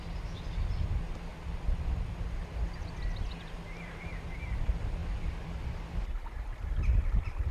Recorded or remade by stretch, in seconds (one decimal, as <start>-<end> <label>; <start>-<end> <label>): 0.0-1.3 recorded; 1.3-2.6 remade; 2.6-5.0 recorded; 5.0-7.5 remade